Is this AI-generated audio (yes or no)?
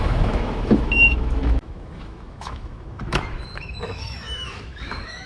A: yes